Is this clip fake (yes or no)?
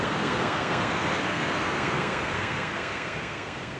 yes